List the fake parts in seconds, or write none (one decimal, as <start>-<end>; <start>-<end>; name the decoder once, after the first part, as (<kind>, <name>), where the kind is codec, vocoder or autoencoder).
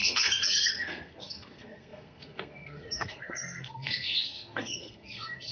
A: 0.0-5.5 (codec, SNAC)